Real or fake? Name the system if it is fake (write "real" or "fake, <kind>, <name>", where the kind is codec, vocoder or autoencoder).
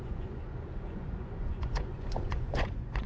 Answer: fake, vocoder, Vocos